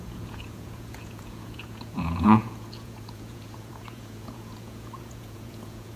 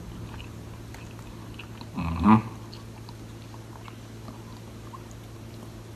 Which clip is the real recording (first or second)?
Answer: second